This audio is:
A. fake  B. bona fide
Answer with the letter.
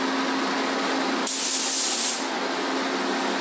B